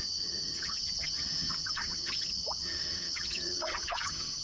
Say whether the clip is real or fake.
fake